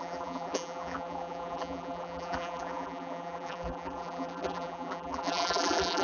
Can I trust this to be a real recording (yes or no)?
no